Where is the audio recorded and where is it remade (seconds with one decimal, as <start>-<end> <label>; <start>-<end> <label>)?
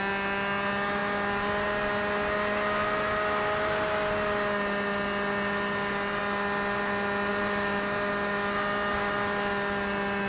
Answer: 0.0-10.3 recorded